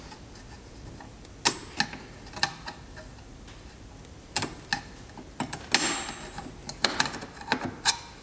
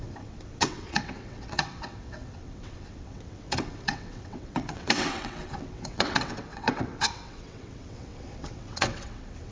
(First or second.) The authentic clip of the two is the first